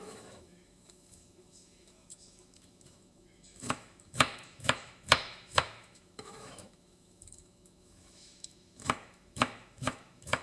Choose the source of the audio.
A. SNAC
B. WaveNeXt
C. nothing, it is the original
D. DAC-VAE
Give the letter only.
D